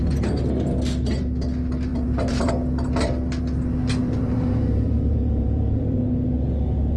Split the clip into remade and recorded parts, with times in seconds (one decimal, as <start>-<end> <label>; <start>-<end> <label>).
0.0-1.9 recorded; 1.9-2.5 remade; 2.5-4.0 recorded; 4.0-6.0 remade; 6.0-7.0 recorded